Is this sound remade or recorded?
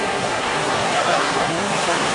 remade